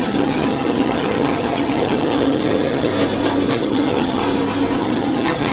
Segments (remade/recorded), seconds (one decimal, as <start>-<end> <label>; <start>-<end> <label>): 0.0-2.9 remade; 2.9-3.5 recorded; 3.5-4.2 remade; 4.2-4.8 recorded; 4.8-5.5 remade